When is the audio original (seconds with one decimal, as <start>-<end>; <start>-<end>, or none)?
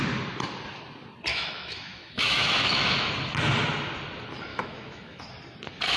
0.0-1.3; 3.1-4.5; 5.2-6.0